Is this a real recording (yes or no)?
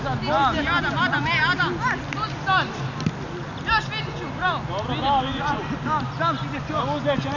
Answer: yes